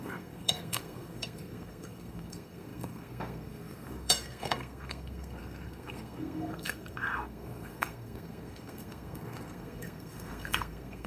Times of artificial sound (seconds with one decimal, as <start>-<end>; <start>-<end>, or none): 0.0-11.1